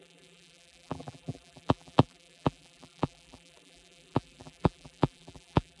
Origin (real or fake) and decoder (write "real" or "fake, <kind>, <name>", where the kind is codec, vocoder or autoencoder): fake, vocoder, BigVGAN v2